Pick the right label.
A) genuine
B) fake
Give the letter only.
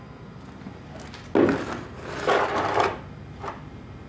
A